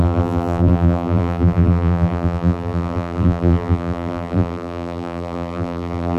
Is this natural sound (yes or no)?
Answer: no